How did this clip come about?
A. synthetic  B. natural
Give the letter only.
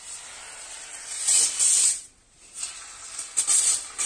B